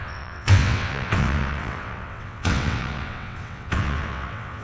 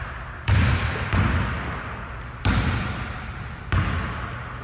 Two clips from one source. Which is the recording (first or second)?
second